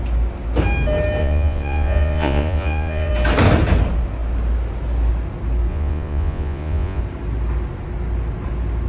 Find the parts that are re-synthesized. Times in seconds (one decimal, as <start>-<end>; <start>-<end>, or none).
1.2-3.1; 5.7-7.0